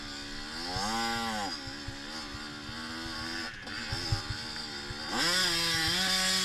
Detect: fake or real real